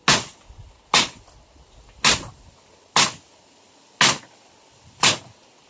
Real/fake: real